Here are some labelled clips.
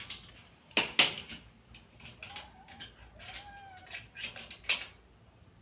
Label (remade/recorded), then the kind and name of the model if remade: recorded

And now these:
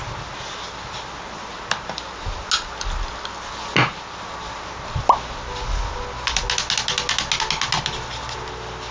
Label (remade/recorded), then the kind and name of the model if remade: recorded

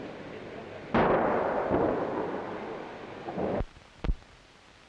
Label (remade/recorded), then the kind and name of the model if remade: recorded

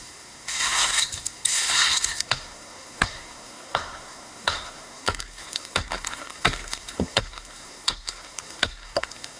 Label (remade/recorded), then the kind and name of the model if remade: remade, codec, SNAC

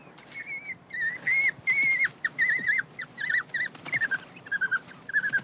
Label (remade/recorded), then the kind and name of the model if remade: recorded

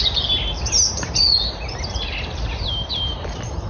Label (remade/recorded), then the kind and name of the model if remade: recorded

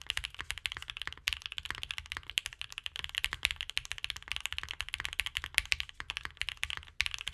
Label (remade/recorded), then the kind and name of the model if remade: recorded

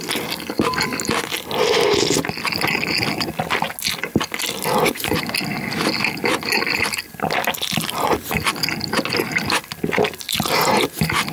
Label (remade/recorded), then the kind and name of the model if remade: recorded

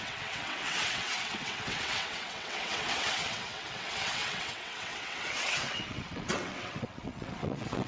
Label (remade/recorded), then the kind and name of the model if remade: remade, vocoder, WaveNeXt